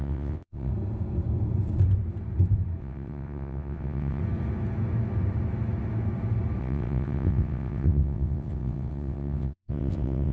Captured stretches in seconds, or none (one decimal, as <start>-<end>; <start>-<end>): 0.7-2.8; 4.2-6.6